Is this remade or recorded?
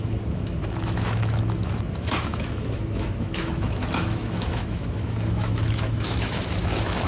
remade